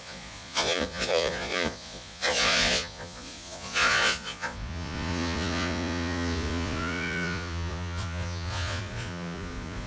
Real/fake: fake